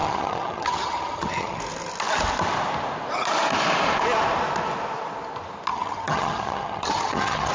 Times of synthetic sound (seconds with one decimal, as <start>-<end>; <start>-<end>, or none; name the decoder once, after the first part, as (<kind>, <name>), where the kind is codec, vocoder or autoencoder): 0.0-1.6 (vocoder, HiFi-GAN); 5.7-7.5